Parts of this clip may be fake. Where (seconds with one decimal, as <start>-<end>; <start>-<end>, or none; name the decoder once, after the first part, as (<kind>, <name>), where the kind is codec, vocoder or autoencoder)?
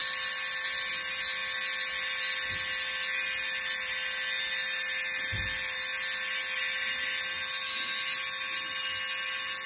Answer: none